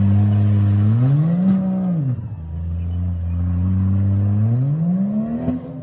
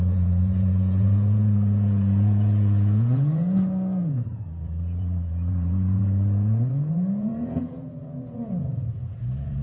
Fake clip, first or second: second